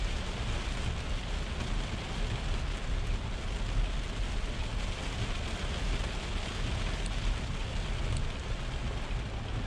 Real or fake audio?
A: real